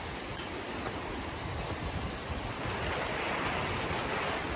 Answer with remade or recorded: recorded